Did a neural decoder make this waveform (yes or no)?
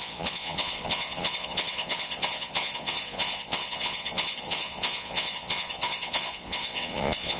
yes